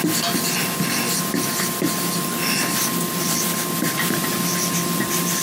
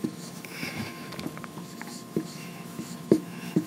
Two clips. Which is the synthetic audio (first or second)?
second